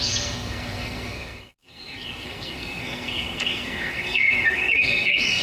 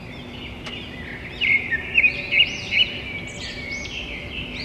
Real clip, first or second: second